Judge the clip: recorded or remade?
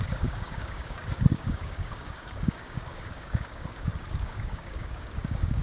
remade